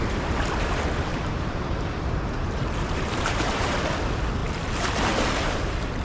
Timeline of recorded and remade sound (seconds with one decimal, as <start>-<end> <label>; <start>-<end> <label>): 0.0-1.1 recorded; 1.1-3.8 remade; 3.8-6.0 recorded